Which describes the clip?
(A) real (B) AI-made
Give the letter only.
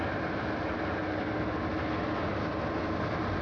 A